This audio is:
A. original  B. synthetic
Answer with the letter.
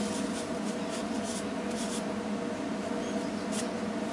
A